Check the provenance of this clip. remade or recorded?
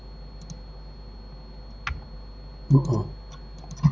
recorded